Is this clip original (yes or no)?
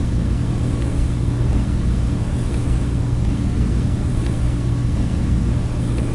no